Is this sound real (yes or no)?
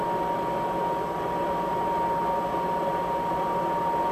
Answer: yes